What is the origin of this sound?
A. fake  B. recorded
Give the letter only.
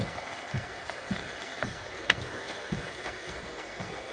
A